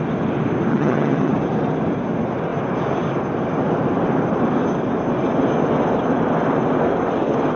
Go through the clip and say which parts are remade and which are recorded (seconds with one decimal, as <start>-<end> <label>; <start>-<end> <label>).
0.0-0.7 recorded; 0.7-1.3 remade; 1.3-7.6 recorded